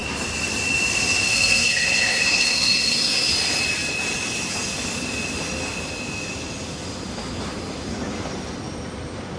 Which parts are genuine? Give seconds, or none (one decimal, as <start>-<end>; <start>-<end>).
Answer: 0.0-1.3; 3.3-9.4